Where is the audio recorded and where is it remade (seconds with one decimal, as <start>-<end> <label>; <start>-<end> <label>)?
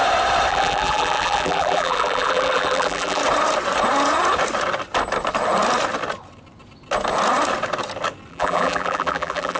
0.0-0.5 recorded; 0.5-3.2 remade; 3.2-8.3 recorded; 8.3-9.6 remade